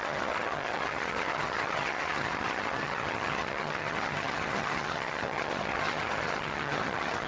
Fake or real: fake